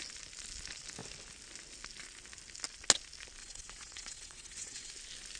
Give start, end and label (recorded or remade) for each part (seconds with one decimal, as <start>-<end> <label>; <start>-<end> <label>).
0.0-3.4 recorded; 3.4-4.9 remade; 4.9-5.4 recorded

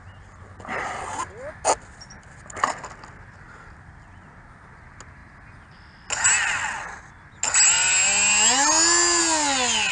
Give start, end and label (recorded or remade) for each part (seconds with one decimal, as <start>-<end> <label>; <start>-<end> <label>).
0.0-9.9 recorded

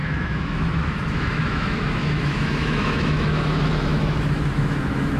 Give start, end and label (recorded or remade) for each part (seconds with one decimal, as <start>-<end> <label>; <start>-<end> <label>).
0.0-5.2 remade

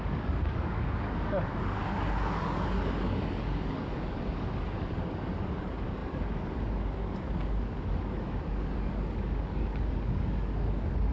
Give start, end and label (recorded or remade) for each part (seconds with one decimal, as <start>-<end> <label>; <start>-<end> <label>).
0.0-11.1 remade

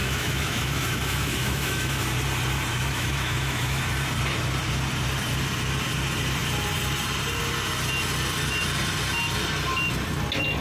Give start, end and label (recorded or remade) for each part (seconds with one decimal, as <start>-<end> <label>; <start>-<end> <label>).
0.0-2.0 remade; 2.0-2.7 recorded; 2.7-3.8 remade; 3.8-10.6 recorded

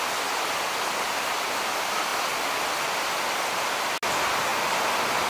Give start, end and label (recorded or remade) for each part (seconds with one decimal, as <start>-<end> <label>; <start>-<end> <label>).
0.0-5.3 recorded